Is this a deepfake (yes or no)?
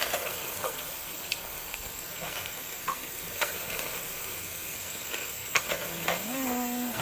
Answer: yes